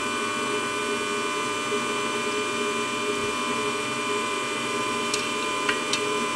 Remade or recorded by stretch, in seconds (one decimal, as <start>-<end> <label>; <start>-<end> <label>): 0.0-6.4 recorded